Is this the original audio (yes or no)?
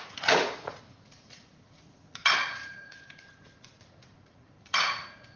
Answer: no